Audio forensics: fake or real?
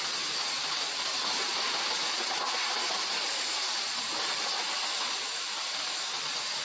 real